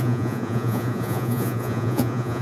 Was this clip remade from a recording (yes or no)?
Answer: yes